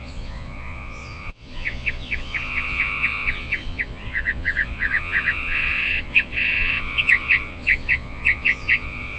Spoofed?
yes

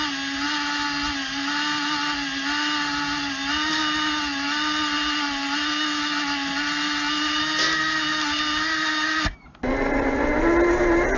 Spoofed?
no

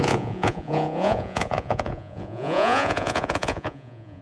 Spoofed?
yes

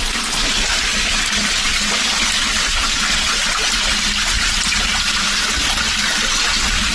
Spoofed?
no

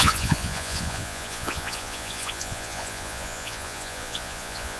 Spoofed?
yes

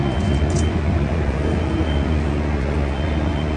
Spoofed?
yes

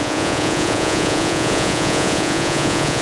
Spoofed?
yes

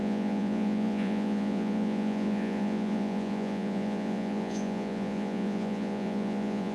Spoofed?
yes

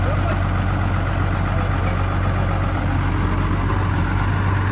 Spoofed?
no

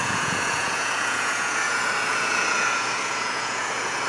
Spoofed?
yes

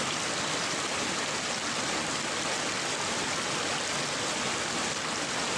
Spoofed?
no